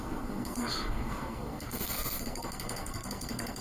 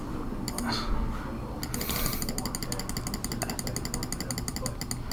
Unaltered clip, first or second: second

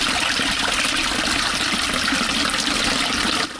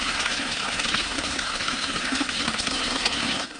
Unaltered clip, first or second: first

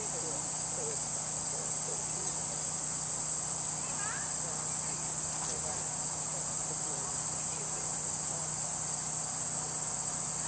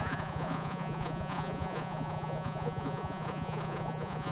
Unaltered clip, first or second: first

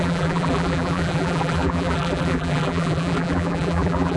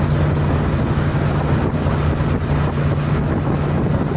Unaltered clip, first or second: second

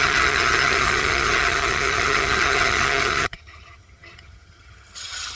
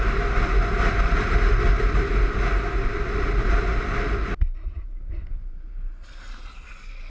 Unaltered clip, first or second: second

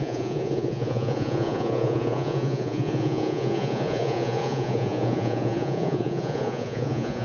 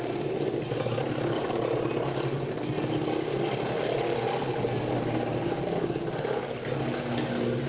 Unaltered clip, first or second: second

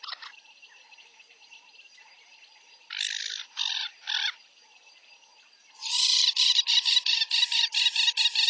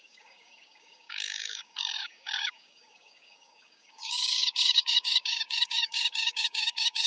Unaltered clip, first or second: first